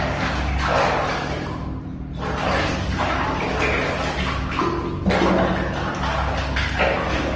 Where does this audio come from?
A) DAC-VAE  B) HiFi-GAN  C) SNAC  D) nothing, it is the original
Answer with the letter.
D